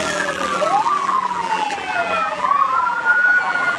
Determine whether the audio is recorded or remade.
remade